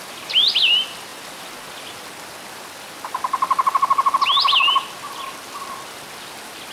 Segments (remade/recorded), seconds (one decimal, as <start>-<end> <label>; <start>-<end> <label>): 0.0-6.7 recorded